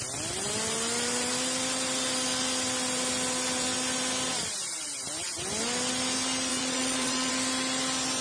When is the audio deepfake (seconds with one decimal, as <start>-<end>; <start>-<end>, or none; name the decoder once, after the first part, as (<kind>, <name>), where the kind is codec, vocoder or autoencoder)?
6.5-7.3 (vocoder, Vocos)